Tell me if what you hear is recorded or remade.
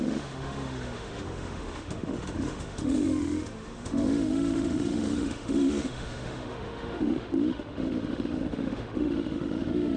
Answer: remade